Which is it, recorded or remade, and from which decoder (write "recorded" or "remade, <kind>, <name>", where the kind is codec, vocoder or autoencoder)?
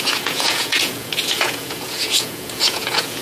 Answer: remade, vocoder, Vocos